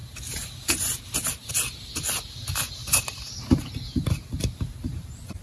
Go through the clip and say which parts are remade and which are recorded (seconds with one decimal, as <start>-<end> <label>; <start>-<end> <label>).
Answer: 0.0-1.5 remade; 1.5-2.8 recorded; 2.8-3.7 remade; 3.7-5.4 recorded